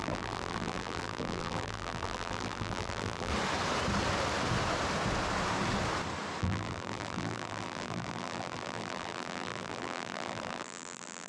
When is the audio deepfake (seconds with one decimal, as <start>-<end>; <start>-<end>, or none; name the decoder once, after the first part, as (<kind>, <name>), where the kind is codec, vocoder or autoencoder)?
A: 0.0-3.3 (vocoder, BigVGAN v2); 6.4-11.3